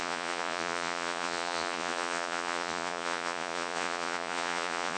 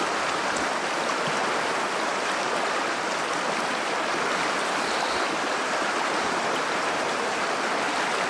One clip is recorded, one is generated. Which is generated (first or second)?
first